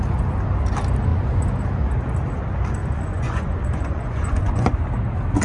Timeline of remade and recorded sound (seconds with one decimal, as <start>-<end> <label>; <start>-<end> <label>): 0.0-1.1 recorded; 1.1-1.6 remade; 1.6-2.8 recorded; 2.8-4.7 remade; 4.7-5.4 recorded